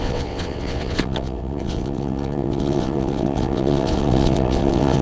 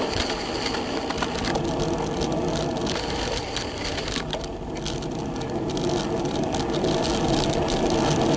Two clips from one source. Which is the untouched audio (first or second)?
second